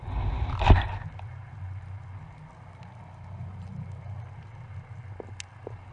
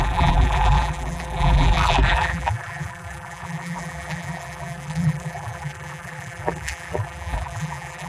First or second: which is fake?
second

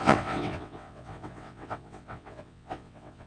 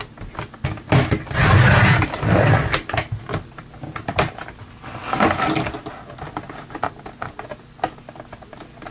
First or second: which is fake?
first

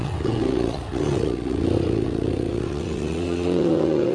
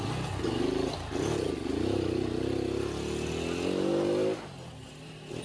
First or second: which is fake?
first